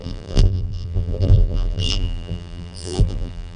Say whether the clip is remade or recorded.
remade